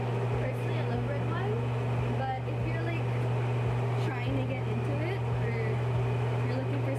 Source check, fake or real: real